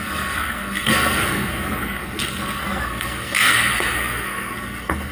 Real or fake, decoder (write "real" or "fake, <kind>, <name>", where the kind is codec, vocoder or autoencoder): fake, codec, SNAC